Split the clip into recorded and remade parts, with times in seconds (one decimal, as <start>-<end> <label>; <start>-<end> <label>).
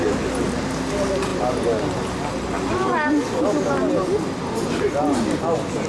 0.0-5.9 recorded